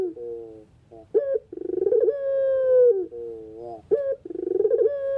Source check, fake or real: real